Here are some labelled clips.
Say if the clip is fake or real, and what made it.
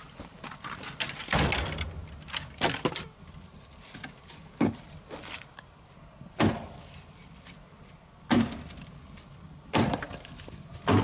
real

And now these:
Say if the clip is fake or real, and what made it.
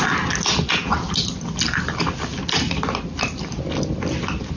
real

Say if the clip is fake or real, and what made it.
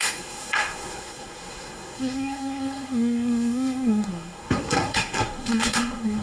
fake, codec, SNAC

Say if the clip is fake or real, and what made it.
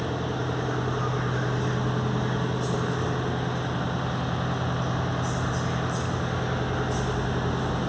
real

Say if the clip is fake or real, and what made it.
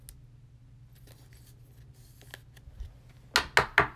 real